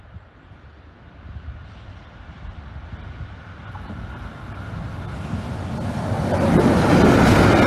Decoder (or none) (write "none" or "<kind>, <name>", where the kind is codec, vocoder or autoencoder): none